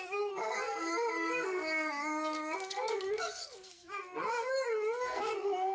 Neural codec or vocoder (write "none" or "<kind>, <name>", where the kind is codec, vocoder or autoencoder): codec, SNAC